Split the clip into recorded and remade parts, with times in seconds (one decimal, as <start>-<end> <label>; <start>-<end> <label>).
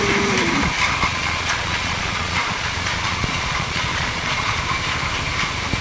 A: 0.0-1.1 recorded; 1.1-4.6 remade; 4.6-5.8 recorded